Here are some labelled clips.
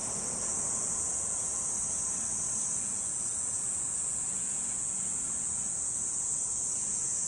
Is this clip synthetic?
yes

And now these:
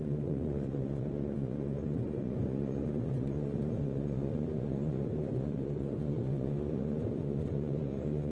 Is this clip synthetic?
yes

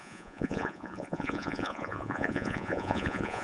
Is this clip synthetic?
yes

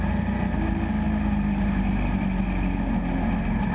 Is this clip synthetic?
no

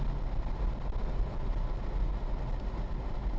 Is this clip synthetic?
no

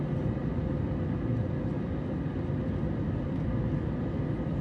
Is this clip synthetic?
no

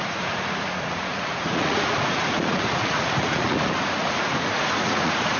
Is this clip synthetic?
yes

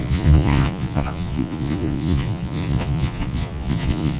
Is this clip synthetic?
yes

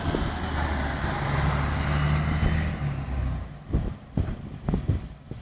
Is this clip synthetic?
no